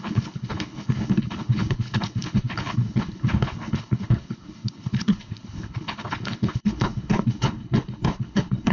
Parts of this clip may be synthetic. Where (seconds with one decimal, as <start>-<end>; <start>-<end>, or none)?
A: 0.0-8.7